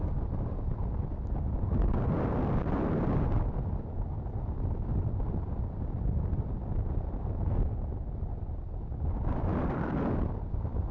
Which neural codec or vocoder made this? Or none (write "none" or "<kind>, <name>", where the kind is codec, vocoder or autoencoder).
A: none